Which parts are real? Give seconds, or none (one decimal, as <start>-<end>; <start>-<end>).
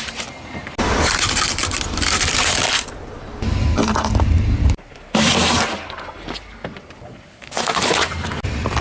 0.0-1.6; 5.6-8.8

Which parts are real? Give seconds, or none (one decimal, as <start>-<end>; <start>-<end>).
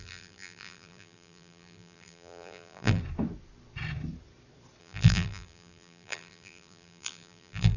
3.0-4.8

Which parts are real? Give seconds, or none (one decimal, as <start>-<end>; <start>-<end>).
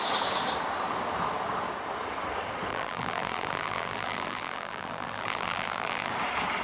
0.0-2.7; 6.1-6.6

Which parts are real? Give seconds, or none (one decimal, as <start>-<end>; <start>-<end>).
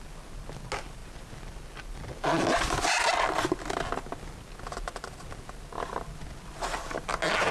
0.0-7.5